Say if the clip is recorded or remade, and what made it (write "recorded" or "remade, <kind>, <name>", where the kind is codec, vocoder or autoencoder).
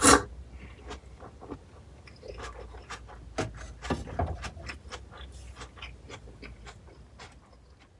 recorded